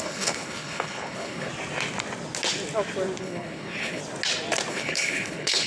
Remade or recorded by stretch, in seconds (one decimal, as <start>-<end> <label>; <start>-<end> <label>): 0.0-1.5 remade; 1.5-3.2 recorded; 3.2-4.0 remade; 4.0-4.7 recorded; 4.7-5.7 remade